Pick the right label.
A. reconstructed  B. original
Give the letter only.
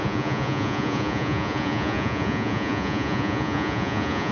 A